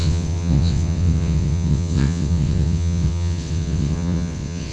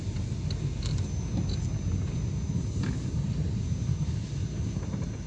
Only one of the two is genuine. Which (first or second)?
second